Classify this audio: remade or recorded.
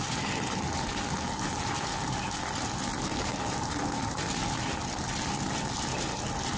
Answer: recorded